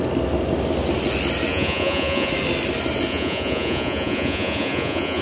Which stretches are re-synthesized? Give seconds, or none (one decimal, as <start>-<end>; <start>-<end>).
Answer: 1.5-2.3; 3.1-5.2